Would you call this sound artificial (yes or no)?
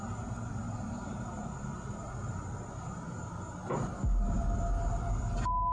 no